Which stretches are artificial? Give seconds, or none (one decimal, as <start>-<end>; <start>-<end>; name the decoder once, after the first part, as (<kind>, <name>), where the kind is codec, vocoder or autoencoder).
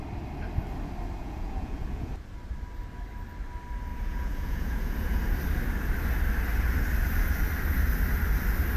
1.2-2.1 (vocoder, Vocos); 3.9-5.2